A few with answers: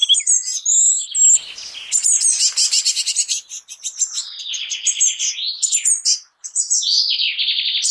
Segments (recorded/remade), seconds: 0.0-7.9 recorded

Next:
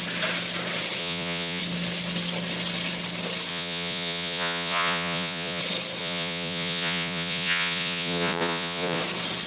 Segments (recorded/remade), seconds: 0.0-1.0 recorded; 1.0-1.6 remade; 1.6-3.5 recorded; 3.5-5.6 remade; 5.6-6.0 recorded; 6.0-9.0 remade; 9.0-9.5 recorded